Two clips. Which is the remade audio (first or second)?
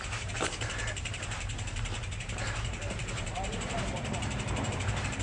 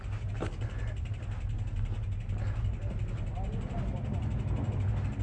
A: first